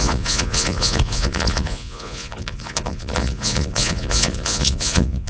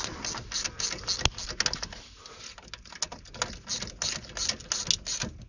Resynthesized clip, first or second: first